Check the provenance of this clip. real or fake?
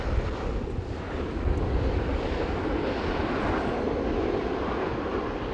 real